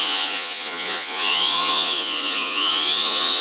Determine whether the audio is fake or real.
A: fake